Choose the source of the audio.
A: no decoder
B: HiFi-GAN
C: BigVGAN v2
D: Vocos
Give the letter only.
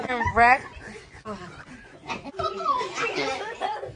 D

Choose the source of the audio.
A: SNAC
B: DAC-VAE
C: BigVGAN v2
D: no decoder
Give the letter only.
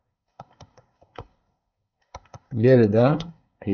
A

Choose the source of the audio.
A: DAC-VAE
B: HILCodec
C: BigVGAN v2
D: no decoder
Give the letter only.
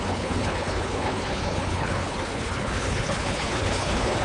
B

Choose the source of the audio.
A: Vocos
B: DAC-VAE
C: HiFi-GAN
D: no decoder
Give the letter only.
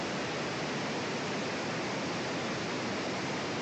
D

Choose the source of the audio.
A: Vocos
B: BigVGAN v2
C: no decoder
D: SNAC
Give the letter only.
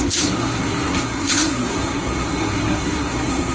D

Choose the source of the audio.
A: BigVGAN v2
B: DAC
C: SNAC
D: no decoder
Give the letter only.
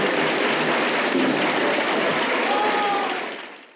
A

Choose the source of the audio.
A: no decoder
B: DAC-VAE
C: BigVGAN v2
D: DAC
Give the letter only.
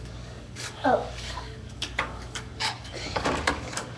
D